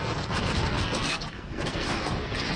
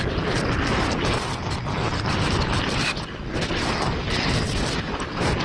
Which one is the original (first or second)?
second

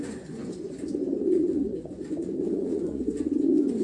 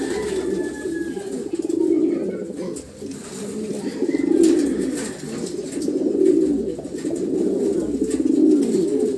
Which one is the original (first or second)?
second